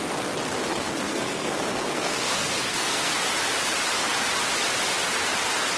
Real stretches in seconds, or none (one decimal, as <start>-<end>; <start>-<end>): 0.0-0.7; 3.2-5.8